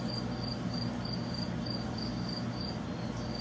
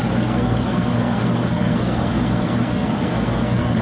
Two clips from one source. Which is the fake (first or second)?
second